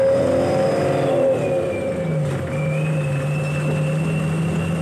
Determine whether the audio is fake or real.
real